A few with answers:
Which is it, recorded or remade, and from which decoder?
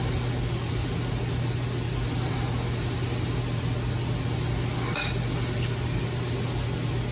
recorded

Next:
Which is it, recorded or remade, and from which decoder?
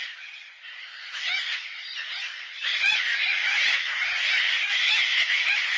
recorded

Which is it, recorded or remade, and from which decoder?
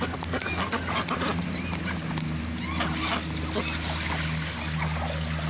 recorded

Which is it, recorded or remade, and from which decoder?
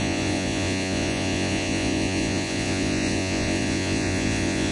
remade, vocoder, Vocos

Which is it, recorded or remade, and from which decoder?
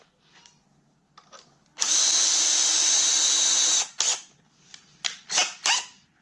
recorded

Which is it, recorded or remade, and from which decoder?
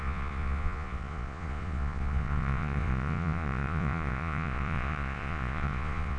remade, vocoder, Vocos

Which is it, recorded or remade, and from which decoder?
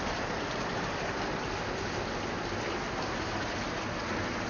recorded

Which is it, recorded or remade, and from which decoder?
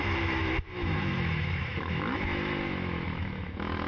remade, autoencoder, DAC-VAE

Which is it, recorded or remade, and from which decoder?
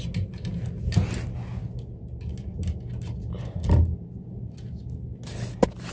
recorded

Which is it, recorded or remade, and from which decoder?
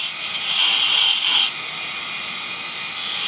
recorded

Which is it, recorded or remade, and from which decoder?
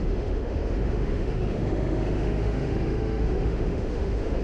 remade, autoencoder, DAC-VAE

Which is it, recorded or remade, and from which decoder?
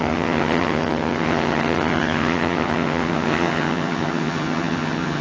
remade, vocoder, HiFi-GAN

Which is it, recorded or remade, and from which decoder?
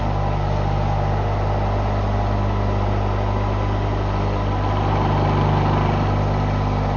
recorded